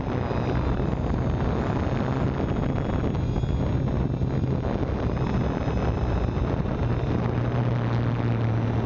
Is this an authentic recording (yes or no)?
yes